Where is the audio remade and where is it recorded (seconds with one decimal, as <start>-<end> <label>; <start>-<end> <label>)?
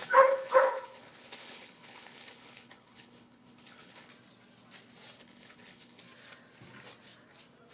0.0-4.1 remade; 4.1-5.2 recorded; 5.2-6.0 remade; 6.0-7.7 recorded